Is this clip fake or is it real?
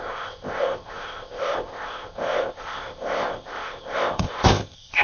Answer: fake